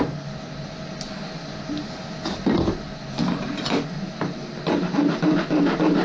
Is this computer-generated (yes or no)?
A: no